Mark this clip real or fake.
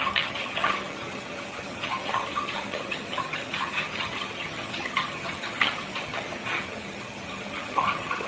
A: fake